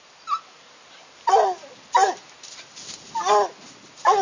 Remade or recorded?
recorded